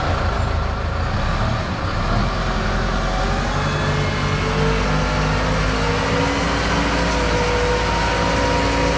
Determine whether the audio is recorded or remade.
recorded